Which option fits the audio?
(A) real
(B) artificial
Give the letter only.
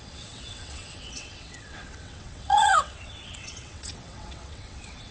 B